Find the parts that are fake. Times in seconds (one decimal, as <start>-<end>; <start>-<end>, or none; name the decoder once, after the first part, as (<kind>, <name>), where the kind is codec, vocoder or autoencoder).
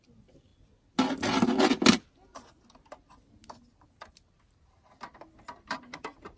none